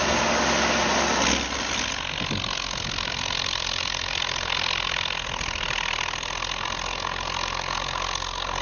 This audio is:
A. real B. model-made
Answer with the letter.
A